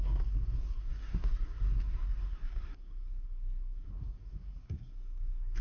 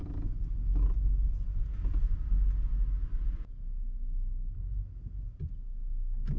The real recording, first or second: second